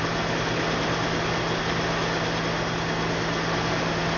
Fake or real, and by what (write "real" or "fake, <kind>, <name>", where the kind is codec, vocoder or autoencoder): real